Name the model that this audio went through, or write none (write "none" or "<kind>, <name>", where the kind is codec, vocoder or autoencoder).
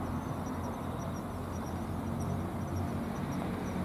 none